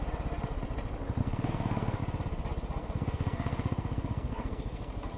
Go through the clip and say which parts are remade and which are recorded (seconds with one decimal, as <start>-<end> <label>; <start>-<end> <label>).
0.0-1.2 recorded; 1.2-2.0 remade; 2.0-2.8 recorded; 2.8-5.2 remade